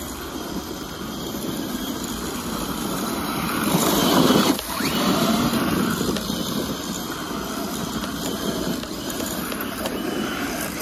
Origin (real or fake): fake